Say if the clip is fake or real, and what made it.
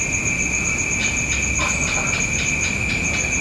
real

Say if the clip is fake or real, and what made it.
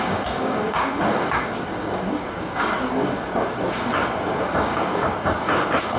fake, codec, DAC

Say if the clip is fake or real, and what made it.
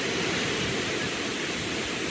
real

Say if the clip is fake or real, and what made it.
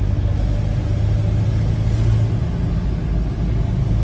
real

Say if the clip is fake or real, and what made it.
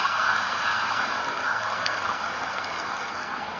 fake, codec, SNAC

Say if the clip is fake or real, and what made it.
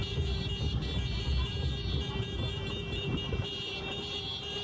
real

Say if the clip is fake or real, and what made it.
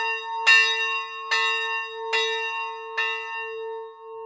real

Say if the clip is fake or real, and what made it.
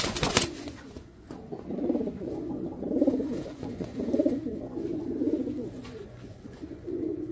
fake, vocoder, Vocos